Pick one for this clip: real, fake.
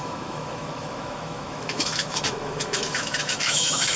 fake